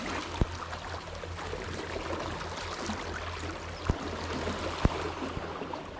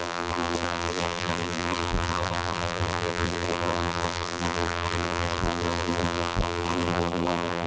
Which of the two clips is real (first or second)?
first